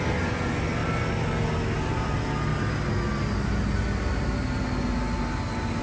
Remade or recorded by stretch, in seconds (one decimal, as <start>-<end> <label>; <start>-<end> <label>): 0.0-5.8 recorded